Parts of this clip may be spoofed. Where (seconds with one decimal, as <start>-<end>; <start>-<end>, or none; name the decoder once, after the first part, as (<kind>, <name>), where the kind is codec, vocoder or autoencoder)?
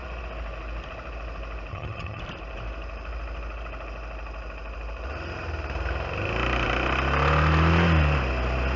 1.7-2.2 (vocoder, HiFi-GAN)